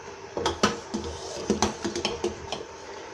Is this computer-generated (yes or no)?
no